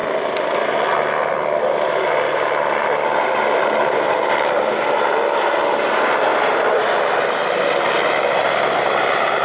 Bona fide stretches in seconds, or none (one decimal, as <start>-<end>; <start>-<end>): 0.0-9.4